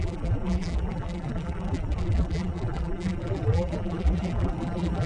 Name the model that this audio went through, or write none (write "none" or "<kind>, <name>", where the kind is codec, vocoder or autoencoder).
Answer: vocoder, BigVGAN v2